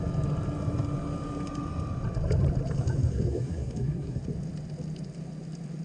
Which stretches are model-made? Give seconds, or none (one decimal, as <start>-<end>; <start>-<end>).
3.1-4.2